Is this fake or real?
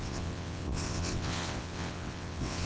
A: fake